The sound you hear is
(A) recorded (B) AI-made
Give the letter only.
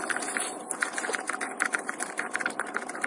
A